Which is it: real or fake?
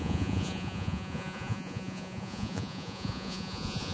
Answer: fake